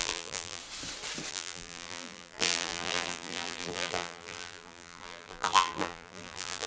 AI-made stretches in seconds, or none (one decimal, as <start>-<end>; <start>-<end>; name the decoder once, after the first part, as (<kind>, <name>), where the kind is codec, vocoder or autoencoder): 0.0-0.6 (vocoder, BigVGAN v2); 1.3-6.7